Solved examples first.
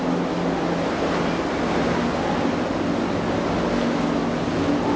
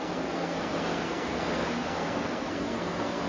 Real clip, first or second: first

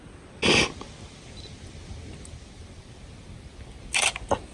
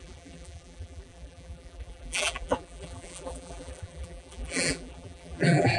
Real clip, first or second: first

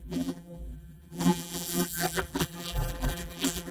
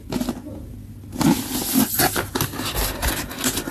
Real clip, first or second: second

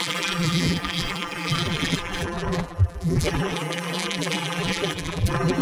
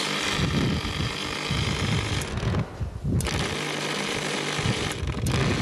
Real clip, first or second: second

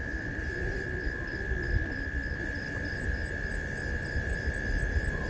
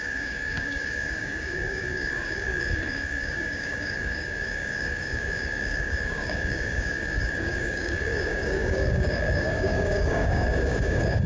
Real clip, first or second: first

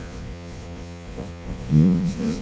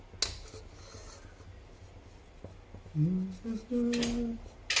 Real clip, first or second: second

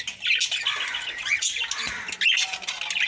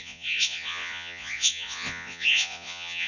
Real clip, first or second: first